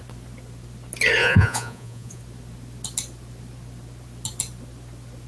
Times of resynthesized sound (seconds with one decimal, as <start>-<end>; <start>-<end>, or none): 1.2-2.2